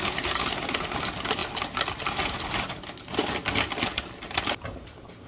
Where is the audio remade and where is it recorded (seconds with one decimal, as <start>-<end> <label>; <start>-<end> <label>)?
0.0-5.3 recorded